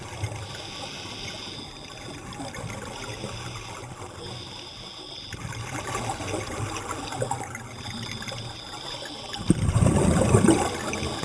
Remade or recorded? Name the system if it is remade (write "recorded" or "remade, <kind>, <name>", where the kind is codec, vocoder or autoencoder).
recorded